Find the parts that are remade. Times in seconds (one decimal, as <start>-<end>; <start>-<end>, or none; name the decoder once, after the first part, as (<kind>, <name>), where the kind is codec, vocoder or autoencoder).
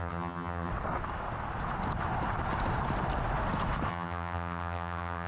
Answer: 0.0-0.7 (vocoder, HiFi-GAN); 3.9-5.3